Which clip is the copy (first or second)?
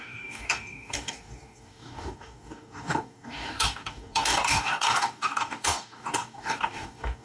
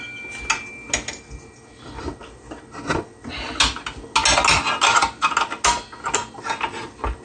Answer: first